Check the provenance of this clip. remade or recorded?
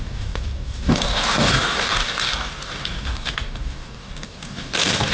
remade